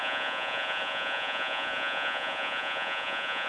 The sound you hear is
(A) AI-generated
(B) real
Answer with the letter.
A